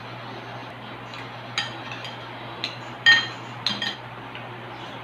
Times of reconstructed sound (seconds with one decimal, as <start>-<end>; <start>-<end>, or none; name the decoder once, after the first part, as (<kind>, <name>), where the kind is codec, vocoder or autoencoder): none